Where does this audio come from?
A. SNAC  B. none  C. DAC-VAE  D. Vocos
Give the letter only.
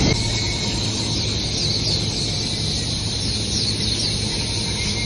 B